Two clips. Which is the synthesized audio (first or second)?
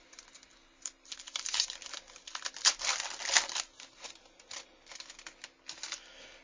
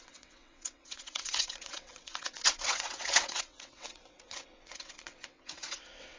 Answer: second